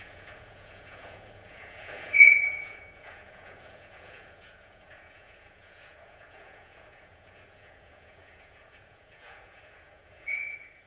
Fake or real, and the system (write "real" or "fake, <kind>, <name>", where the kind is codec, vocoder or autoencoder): fake, vocoder, Vocos